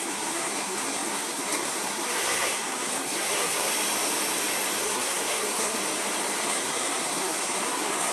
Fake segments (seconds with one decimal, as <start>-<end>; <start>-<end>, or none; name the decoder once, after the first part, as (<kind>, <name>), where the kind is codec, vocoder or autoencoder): 0.0-3.7 (codec, SNAC); 4.8-5.8; 6.4-8.1